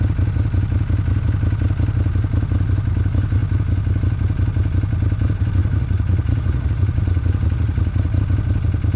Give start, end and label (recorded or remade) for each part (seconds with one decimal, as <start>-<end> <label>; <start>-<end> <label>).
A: 0.0-5.6 recorded; 5.6-8.2 remade; 8.2-9.0 recorded

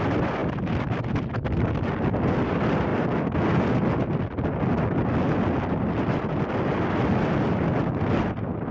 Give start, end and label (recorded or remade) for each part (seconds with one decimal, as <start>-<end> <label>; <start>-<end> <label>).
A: 0.0-8.7 recorded

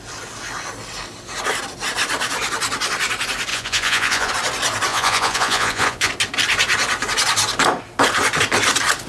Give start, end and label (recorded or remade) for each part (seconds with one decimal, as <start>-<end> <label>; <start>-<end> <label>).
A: 0.0-3.5 recorded; 3.5-4.3 remade; 4.3-4.9 recorded; 4.9-6.1 remade; 6.1-9.1 recorded